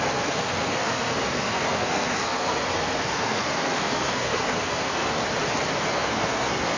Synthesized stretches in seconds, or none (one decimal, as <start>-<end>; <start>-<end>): 0.0-5.2; 5.8-6.8